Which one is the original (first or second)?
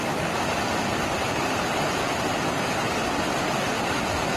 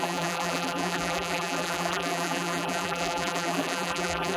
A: first